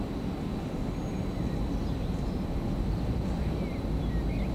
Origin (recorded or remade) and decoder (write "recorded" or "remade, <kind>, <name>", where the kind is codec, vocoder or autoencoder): recorded